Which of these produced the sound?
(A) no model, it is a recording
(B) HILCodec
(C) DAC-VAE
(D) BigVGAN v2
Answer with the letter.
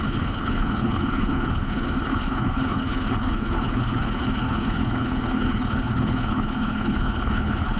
B